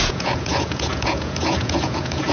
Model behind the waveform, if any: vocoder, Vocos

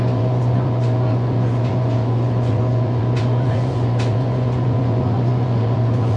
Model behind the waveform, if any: vocoder, Vocos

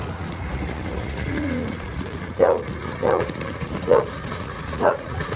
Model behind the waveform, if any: vocoder, Vocos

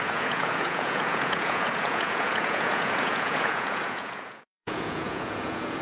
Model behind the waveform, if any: vocoder, Vocos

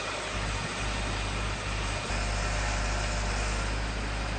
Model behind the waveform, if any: none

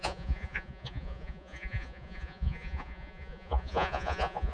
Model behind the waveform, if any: vocoder, Vocos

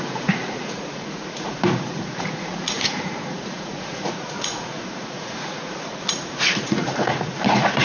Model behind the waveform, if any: vocoder, Vocos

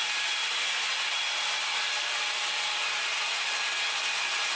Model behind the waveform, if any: none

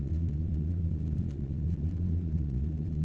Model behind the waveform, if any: vocoder, Vocos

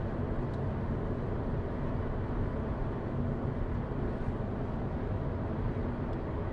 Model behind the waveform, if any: none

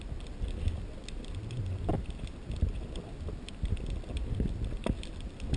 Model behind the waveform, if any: none